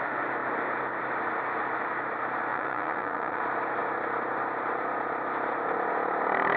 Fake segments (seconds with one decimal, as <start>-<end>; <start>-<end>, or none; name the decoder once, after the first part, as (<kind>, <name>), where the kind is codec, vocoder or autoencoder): 2.5-3.4 (vocoder, Vocos)